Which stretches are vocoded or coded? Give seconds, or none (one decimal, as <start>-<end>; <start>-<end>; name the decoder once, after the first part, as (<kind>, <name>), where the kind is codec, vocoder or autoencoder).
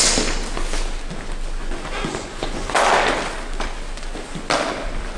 1.6-2.8 (vocoder, Vocos)